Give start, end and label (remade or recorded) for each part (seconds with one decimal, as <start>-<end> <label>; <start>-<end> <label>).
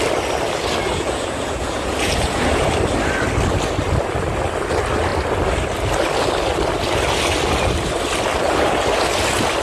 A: 0.0-0.9 recorded; 0.9-2.7 remade; 2.7-9.6 recorded